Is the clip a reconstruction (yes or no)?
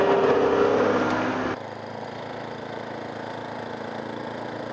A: no